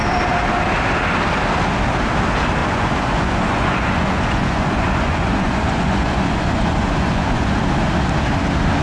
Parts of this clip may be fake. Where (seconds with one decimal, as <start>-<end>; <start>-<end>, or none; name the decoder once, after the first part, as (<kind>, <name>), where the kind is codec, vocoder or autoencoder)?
2.6-7.6 (vocoder, Vocos)

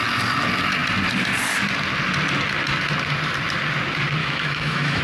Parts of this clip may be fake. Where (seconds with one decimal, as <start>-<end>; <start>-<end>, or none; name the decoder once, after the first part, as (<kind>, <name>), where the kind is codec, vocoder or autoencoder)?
4.2-5.0 (autoencoder, DAC-VAE)

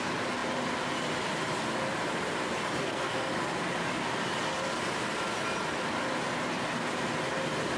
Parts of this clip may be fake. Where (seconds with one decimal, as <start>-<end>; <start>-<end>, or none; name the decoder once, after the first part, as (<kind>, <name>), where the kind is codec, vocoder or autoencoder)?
2.8-3.3 (codec, SNAC)

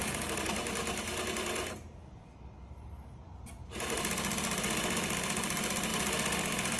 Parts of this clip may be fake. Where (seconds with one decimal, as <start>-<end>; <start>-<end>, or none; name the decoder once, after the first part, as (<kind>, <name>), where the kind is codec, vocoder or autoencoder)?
0.0-4.1 (vocoder, BigVGAN v2)